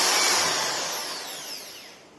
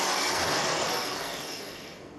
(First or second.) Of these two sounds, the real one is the first